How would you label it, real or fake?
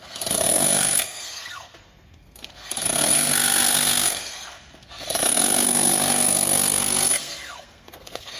fake